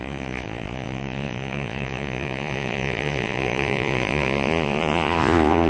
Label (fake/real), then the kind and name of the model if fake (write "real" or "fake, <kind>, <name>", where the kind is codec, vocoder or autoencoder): fake, vocoder, Vocos